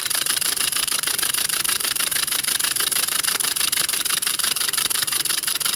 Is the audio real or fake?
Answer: fake